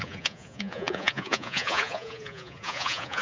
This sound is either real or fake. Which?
fake